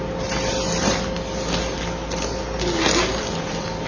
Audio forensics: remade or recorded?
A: remade